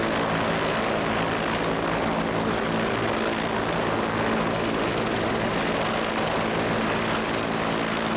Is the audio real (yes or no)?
yes